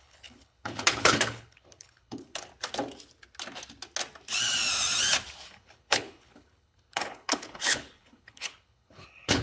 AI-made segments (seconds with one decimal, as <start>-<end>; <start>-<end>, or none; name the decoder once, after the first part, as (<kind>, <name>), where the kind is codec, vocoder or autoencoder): 0.0-2.5 (codec, HILCodec); 5.5-9.4